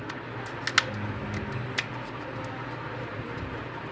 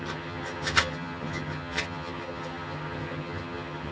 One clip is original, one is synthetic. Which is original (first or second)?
first